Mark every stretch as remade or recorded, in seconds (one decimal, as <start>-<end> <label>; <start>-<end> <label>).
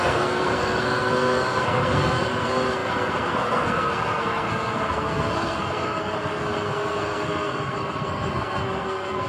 0.0-9.3 remade